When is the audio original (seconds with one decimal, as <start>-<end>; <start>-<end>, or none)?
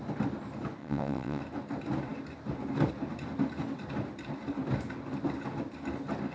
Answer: 0.0-0.8; 1.4-6.3